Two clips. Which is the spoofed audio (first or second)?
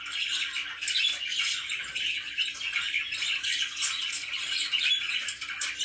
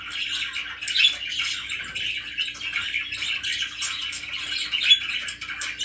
first